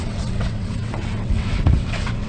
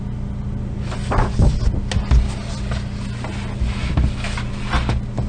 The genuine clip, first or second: second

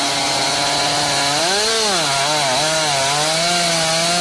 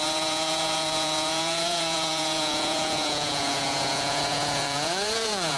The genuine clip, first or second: first